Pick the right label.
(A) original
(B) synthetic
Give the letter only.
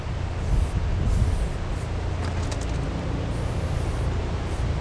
A